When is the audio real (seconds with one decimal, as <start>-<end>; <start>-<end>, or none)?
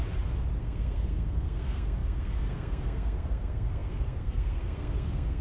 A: 0.0-0.6